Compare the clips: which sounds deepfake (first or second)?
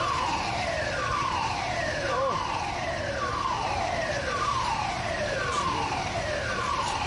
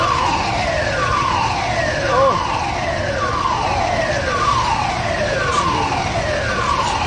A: first